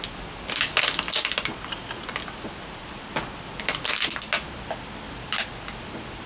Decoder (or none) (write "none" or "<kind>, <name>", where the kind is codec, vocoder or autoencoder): none